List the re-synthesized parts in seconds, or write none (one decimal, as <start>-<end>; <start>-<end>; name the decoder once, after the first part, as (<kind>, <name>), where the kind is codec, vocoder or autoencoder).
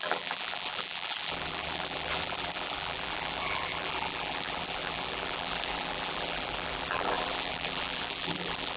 0.0-8.8 (vocoder, BigVGAN v2)